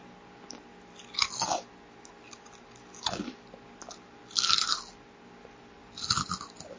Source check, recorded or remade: recorded